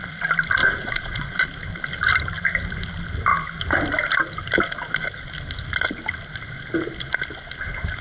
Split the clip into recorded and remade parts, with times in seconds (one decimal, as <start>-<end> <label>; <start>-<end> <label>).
0.0-0.6 recorded; 0.6-1.4 remade; 1.4-8.0 recorded